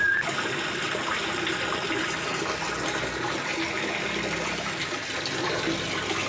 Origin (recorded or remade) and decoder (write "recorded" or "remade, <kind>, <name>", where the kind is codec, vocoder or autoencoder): recorded